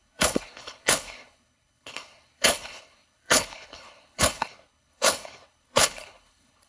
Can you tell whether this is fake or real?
fake